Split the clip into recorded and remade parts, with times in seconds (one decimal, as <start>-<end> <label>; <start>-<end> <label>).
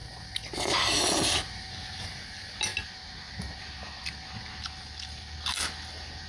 0.0-6.3 recorded